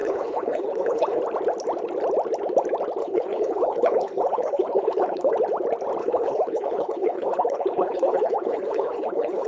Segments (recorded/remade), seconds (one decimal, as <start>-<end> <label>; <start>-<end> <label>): 0.0-1.2 remade; 1.2-3.0 recorded; 3.0-5.3 remade; 5.3-6.0 recorded; 6.0-9.5 remade